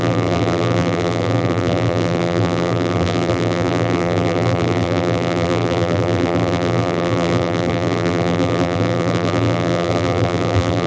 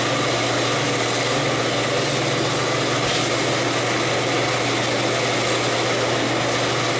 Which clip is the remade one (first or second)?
first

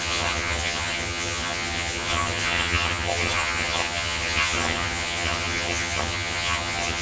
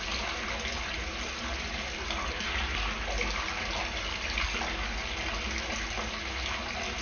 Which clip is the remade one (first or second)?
first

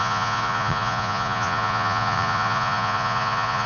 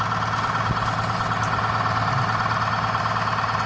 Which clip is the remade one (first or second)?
first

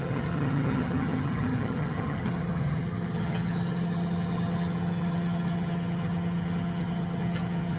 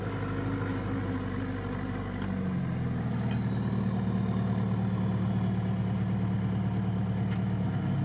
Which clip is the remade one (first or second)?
first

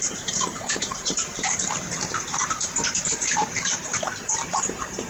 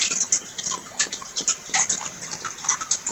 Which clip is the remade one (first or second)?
first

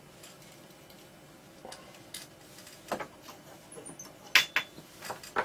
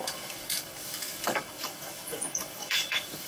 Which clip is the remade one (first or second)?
second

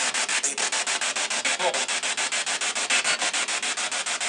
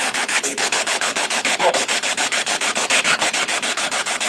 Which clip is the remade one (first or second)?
second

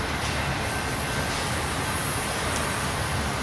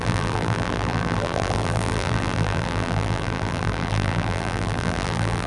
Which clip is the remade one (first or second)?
second